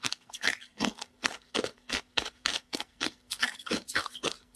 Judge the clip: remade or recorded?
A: remade